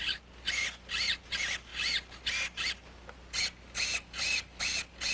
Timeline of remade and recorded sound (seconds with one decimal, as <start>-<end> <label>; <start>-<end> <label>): 0.0-5.1 recorded